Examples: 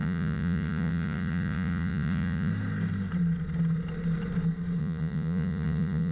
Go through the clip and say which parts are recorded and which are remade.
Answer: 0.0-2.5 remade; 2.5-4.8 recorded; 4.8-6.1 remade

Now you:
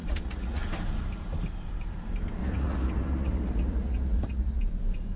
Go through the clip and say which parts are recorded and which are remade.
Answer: 0.0-0.6 remade; 0.6-2.4 recorded; 2.4-4.6 remade; 4.6-5.2 recorded

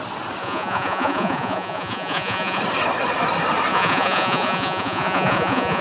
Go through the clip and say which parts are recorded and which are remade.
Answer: 0.0-0.4 recorded; 0.4-2.6 remade; 2.6-3.7 recorded; 3.7-5.8 remade